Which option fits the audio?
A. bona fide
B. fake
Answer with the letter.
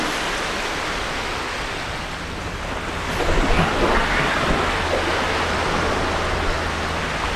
A